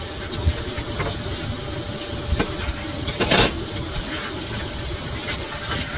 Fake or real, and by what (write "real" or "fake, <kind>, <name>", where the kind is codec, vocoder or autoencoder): real